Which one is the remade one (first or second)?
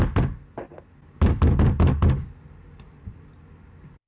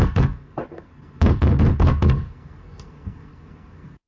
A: second